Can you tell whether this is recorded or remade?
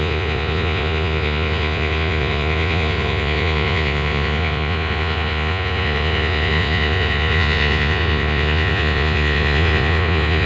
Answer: remade